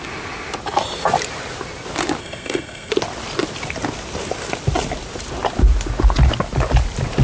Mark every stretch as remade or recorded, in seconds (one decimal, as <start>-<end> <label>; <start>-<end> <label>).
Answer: 0.0-2.2 recorded; 2.2-2.9 remade; 2.9-7.2 recorded